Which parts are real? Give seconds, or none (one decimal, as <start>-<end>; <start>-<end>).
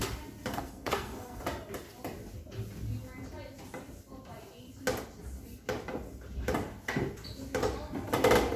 0.0-0.5; 1.4-8.6